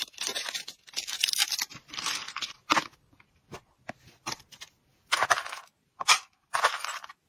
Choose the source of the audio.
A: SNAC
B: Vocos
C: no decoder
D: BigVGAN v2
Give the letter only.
C